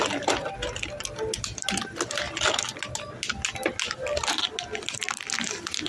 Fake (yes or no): no